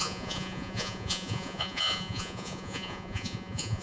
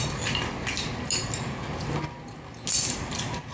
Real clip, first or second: second